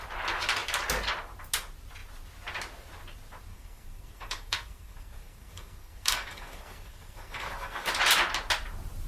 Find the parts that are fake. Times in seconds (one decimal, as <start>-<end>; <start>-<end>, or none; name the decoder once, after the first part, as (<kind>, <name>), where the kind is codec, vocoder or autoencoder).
3.5-7.9 (codec, SNAC)